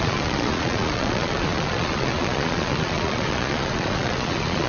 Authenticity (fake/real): fake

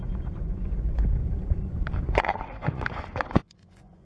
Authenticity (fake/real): fake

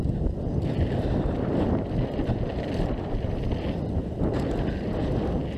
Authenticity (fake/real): real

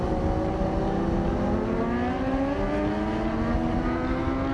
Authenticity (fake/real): real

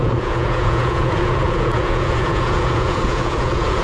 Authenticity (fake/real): fake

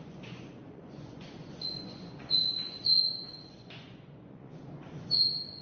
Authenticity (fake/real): fake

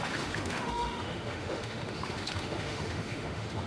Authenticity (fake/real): fake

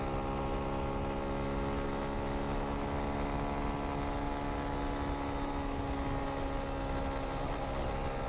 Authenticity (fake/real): real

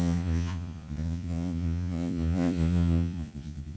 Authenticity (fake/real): fake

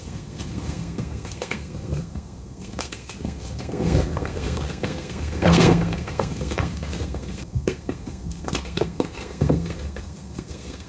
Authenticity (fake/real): fake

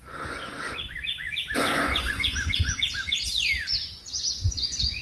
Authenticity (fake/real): fake